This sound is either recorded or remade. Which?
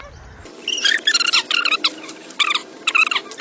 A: recorded